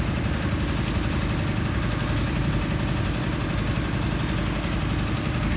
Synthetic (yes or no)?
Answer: no